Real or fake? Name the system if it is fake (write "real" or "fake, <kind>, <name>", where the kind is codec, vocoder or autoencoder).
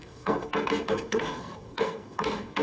fake, codec, SNAC